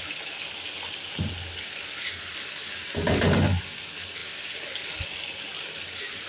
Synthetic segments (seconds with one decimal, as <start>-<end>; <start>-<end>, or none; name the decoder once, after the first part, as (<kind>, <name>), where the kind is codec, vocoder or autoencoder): none